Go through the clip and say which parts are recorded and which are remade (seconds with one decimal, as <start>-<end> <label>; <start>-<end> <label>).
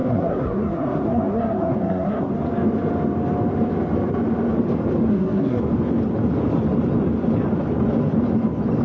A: 0.0-2.3 remade; 2.3-5.1 recorded; 5.1-5.6 remade; 5.6-8.8 recorded